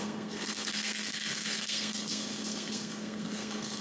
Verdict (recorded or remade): remade